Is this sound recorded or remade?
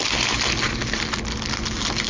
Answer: recorded